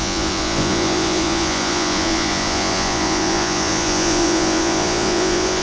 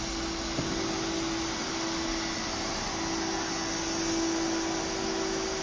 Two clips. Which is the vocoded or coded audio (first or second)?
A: first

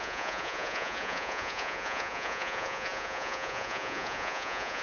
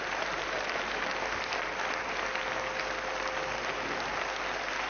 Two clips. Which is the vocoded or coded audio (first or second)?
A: first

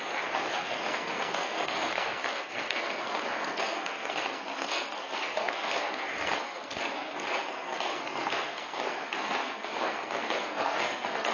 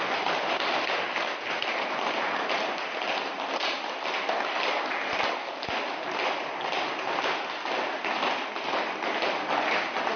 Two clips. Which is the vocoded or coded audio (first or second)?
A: first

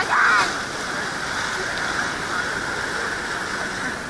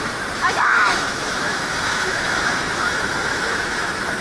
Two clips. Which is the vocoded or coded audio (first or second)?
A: second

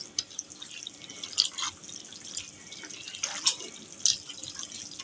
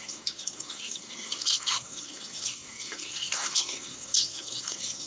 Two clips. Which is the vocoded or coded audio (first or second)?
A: second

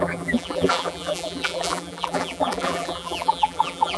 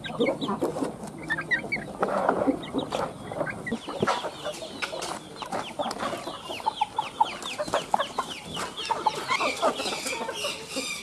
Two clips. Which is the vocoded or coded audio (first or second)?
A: first